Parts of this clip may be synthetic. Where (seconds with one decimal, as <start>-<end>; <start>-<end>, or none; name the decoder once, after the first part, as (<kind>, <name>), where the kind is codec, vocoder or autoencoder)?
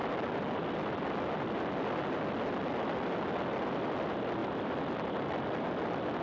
none